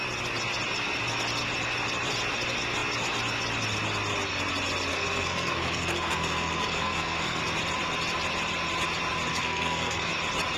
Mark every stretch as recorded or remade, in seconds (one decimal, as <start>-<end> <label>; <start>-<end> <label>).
0.0-4.9 recorded; 4.9-7.4 remade; 7.4-9.3 recorded; 9.3-10.1 remade; 10.1-10.6 recorded